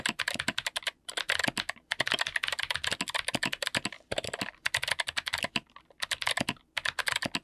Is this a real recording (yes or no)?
yes